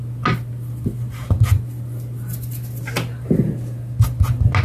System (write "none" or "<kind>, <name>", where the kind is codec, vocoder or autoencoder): none